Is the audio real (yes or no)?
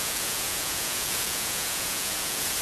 no